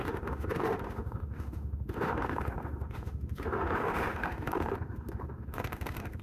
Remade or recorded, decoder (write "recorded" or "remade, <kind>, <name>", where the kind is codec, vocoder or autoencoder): remade, autoencoder, DAC-VAE